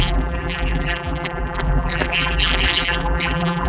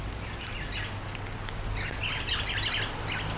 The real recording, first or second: second